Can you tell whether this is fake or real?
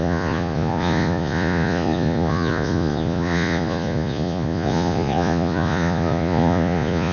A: fake